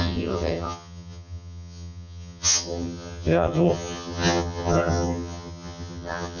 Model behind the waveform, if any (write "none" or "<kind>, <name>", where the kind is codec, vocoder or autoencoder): vocoder, HiFi-GAN